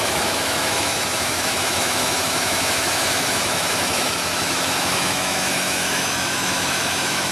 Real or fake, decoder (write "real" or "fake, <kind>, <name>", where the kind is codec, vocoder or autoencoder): fake, autoencoder, DAC-VAE